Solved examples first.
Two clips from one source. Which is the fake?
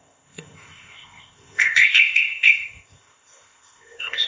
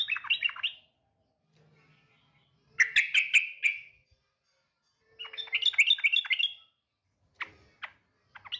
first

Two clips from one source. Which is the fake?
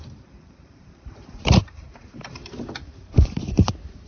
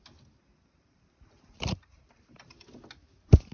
first